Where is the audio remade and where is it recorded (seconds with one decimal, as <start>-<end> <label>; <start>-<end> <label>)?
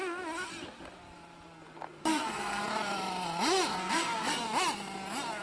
0.0-2.0 recorded; 2.0-2.6 remade; 2.6-3.7 recorded; 3.7-4.4 remade; 4.4-5.4 recorded